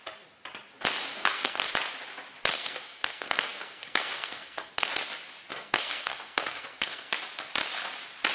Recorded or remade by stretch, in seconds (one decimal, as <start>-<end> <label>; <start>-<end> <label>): 0.0-1.1 recorded; 1.1-1.7 remade; 1.7-2.5 recorded; 2.5-4.9 remade; 4.9-5.5 recorded; 5.5-7.1 remade; 7.1-8.3 recorded